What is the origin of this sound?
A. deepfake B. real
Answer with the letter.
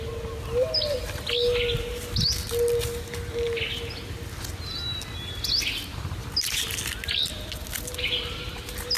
B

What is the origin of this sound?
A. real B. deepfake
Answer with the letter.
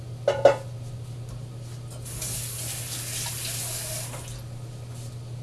A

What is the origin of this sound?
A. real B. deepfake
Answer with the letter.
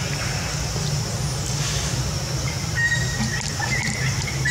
A